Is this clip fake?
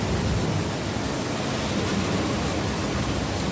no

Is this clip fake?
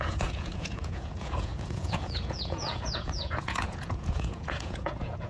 yes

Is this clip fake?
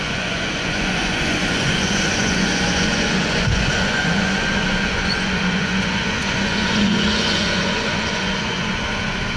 yes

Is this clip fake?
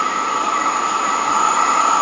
no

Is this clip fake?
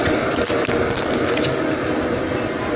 no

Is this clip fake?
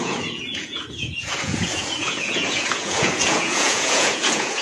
yes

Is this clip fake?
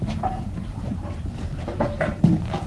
no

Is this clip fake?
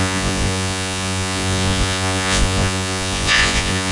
yes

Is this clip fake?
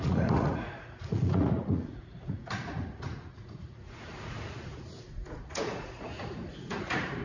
yes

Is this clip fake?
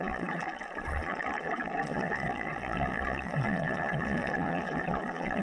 yes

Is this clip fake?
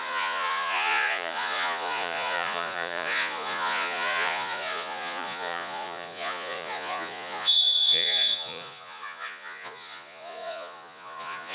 yes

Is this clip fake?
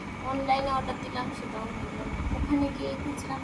no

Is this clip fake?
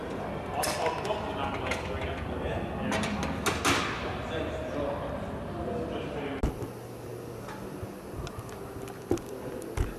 no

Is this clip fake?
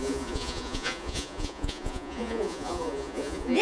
yes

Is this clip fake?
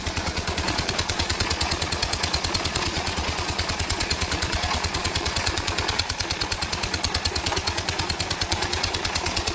yes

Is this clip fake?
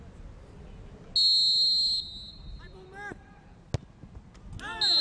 no